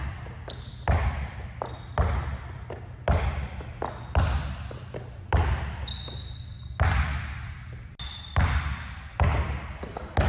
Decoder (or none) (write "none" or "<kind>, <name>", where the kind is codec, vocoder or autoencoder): none